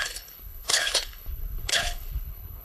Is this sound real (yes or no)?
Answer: no